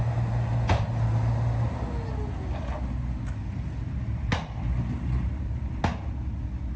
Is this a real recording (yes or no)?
yes